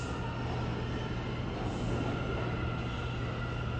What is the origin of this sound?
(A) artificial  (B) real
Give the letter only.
B